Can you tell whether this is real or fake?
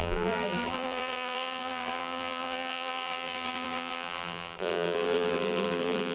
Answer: fake